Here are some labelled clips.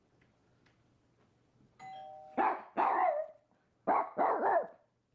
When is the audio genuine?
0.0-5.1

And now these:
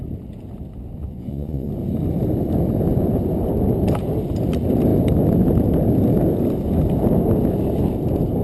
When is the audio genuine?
0.0-1.0; 1.7-8.4

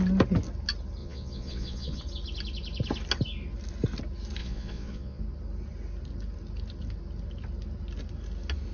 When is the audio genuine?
0.0-1.0; 2.0-4.4; 5.2-8.7

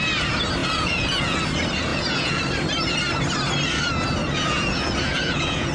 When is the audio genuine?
0.0-0.6; 1.4-1.9; 2.4-4.2

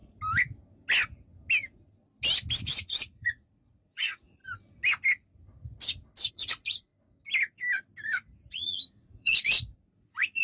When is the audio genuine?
0.0-2.6; 4.4-6.3; 6.9-8.5

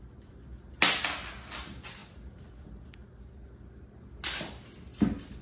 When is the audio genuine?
0.0-5.4